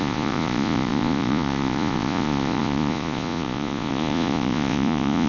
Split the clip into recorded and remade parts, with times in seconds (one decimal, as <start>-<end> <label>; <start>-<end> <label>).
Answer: 0.0-5.3 remade